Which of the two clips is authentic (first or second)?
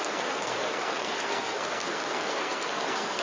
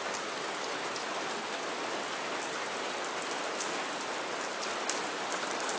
second